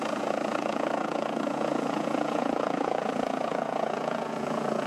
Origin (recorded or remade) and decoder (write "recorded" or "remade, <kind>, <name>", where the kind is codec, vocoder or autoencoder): remade, vocoder, Vocos